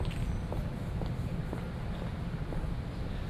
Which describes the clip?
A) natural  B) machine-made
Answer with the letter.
A